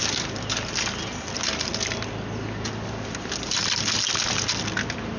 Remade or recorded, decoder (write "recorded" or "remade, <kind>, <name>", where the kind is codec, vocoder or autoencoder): recorded